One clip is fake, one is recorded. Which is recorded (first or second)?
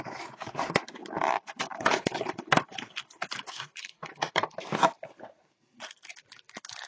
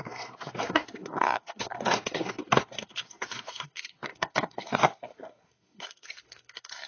first